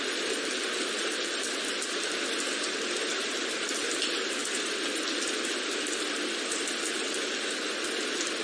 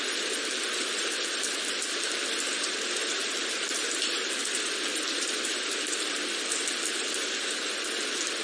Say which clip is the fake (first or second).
second